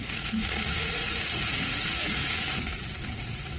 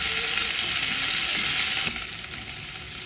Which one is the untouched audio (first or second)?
second